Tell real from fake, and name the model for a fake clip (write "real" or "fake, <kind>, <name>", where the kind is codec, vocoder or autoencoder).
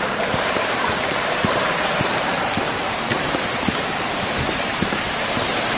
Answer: fake, vocoder, BigVGAN v2